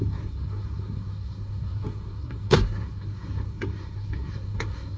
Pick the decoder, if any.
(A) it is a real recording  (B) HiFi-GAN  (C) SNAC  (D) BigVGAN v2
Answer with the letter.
C